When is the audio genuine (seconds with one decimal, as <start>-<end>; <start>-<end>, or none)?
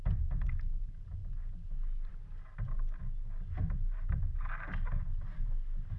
0.0-6.0